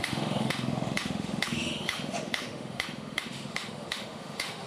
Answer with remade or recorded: remade